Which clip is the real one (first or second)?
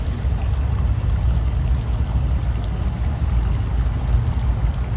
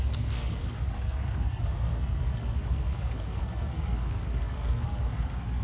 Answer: first